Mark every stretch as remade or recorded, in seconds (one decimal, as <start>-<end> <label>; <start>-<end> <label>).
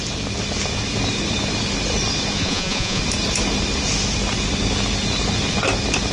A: 0.0-2.4 recorded; 2.4-3.0 remade; 3.0-6.1 recorded